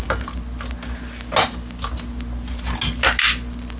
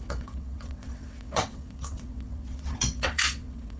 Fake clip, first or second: second